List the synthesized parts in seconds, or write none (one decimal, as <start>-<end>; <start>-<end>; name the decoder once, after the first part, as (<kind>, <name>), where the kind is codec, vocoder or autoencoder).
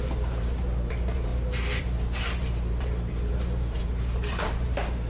0.0-1.3 (vocoder, BigVGAN v2); 1.8-5.1